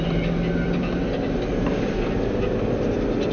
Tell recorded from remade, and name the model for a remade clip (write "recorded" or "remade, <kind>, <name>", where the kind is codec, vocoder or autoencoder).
recorded